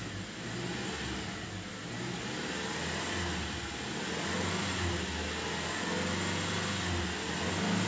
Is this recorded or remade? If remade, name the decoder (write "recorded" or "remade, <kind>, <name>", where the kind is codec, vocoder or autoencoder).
recorded